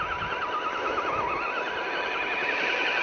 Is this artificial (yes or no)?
no